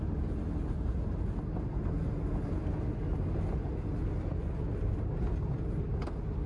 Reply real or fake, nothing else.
real